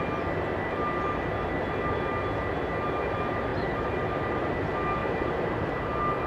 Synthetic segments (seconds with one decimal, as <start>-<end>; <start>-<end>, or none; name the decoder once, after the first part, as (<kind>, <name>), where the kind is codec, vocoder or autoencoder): 3.5-4.5 (vocoder, BigVGAN v2); 5.0-5.7